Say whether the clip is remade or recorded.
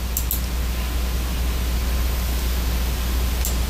recorded